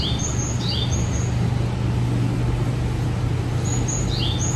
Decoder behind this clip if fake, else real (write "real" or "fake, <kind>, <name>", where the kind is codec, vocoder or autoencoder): real